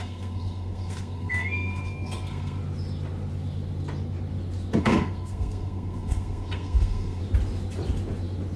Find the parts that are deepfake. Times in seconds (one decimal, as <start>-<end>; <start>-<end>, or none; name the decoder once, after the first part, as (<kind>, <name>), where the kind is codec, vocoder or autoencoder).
0.0-2.6 (codec, SNAC); 4.8-7.2